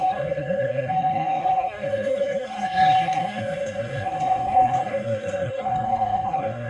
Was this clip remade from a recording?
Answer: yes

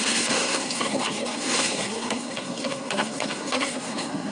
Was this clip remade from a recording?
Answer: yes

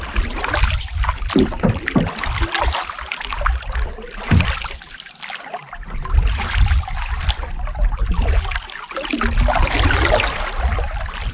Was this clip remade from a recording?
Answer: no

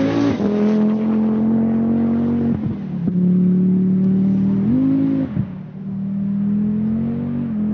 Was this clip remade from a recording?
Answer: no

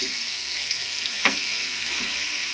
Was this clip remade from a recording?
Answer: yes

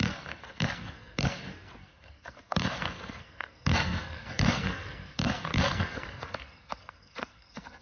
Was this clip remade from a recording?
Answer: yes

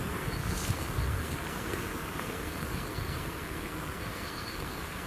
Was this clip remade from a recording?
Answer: yes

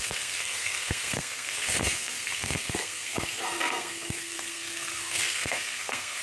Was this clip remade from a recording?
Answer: yes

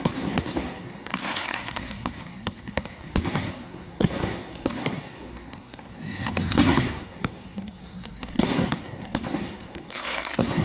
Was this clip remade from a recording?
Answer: yes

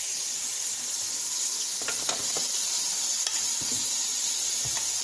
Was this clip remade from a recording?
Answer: no